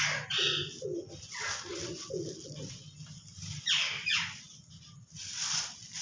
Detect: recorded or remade recorded